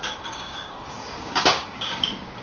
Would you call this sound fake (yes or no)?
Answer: yes